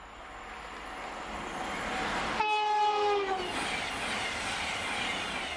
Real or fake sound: real